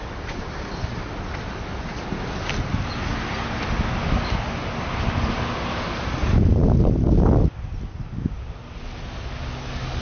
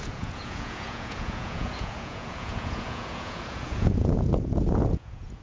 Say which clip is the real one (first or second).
first